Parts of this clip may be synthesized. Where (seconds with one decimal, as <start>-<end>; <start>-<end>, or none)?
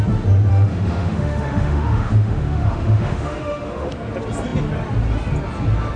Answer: 0.5-3.9